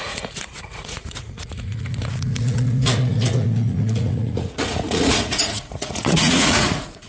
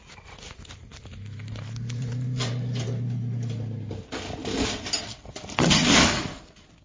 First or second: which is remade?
first